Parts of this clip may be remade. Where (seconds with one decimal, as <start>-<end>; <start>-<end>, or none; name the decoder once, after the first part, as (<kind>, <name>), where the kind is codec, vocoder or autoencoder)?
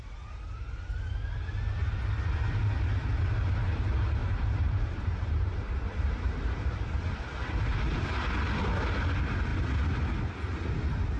4.2-7.2 (vocoder, BigVGAN v2)